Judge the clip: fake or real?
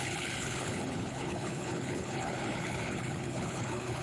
fake